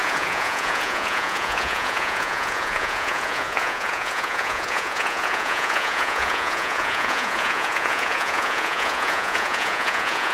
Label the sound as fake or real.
fake